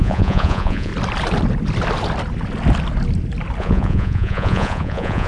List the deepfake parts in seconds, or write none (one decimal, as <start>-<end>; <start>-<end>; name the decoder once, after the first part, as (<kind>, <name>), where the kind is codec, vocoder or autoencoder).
0.0-0.9 (vocoder, Vocos); 3.6-5.3